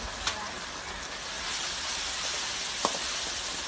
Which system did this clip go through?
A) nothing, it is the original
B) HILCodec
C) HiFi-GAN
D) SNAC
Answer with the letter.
A